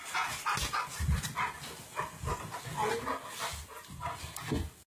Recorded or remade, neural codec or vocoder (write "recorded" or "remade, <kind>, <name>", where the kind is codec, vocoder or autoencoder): recorded